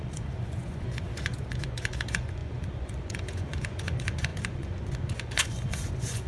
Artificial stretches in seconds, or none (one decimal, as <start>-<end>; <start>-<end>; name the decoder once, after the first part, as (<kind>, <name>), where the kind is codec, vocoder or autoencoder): 0.0-6.3 (vocoder, Vocos)